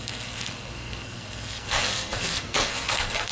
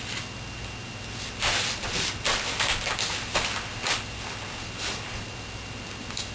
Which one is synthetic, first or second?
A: first